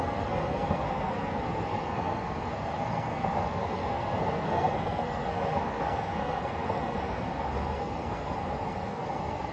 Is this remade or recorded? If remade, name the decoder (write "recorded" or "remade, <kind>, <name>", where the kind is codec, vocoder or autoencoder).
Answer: remade, codec, SNAC